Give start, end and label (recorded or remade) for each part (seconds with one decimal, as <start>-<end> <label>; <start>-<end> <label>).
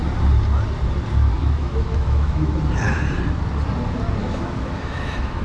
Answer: 0.0-1.4 recorded; 1.4-2.6 remade; 2.6-4.2 recorded; 4.2-5.4 remade